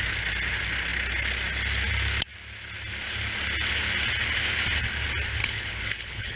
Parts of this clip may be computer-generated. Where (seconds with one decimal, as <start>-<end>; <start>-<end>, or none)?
5.4-6.4